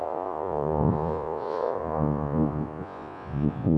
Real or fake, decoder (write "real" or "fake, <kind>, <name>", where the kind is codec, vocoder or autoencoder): fake, vocoder, Vocos